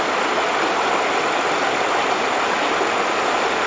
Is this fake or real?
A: real